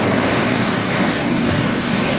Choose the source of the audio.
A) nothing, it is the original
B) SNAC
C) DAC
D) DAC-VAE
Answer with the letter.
C